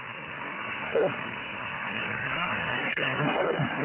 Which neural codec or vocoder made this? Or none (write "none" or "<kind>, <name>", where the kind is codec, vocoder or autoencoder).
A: codec, SNAC